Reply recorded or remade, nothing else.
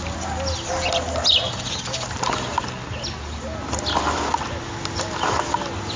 recorded